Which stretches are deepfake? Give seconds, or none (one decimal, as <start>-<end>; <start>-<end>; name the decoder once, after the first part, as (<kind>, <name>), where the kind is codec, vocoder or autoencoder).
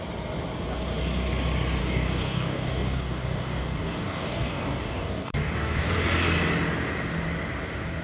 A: 1.8-5.9 (codec, DAC)